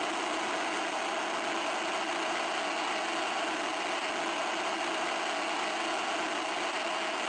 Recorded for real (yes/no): yes